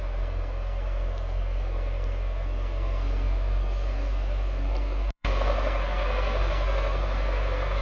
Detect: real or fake fake